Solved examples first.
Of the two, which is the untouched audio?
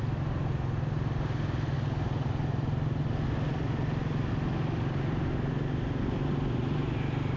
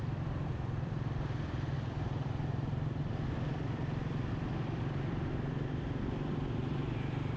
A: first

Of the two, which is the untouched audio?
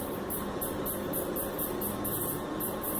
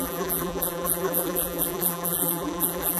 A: first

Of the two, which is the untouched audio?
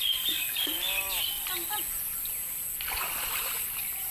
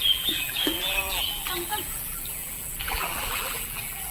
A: first